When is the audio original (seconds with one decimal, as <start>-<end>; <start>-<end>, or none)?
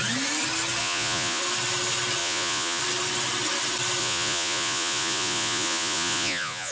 0.0-0.8; 1.4-2.2; 2.8-4.0